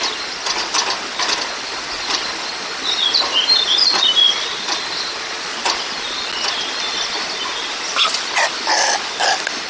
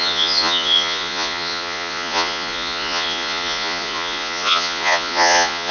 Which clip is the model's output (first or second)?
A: second